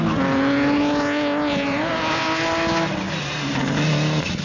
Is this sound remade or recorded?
recorded